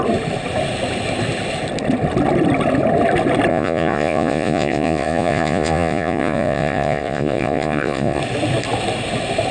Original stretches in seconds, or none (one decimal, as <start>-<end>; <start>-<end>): 0.0-3.5; 8.2-9.5